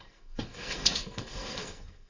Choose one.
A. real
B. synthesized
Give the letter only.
B